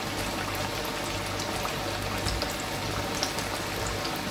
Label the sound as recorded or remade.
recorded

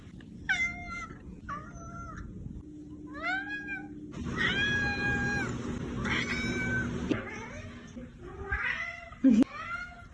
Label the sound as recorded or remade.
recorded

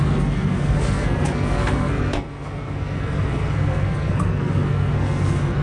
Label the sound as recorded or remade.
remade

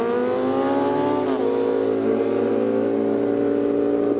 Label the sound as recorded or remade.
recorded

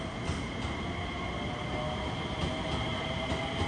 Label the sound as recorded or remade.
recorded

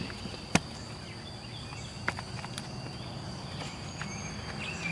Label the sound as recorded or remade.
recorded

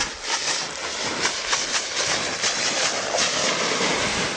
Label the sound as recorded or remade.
recorded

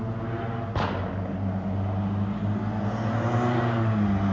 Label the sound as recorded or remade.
recorded